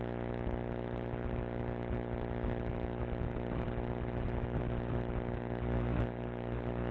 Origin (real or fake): fake